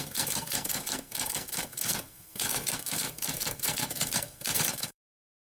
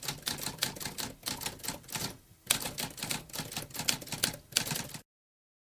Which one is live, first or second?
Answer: second